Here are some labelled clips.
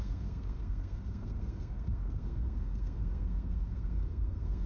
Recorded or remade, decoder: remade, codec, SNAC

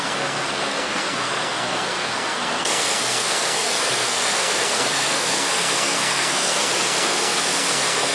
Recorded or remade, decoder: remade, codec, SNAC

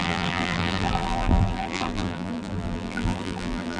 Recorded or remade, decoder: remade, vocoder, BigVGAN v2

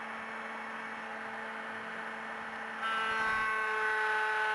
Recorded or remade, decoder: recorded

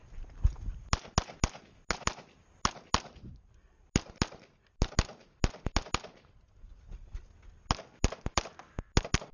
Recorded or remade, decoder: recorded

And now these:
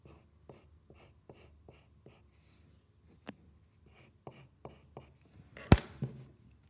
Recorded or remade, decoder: recorded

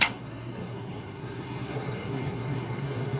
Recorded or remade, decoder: remade, codec, SNAC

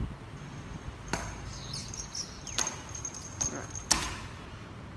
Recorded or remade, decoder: recorded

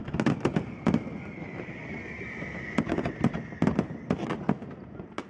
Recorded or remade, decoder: recorded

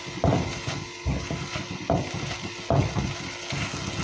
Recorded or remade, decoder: recorded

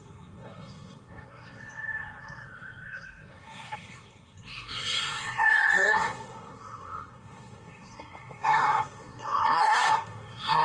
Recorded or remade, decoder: remade, codec, SNAC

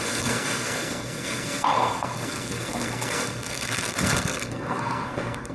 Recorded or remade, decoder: remade, codec, SNAC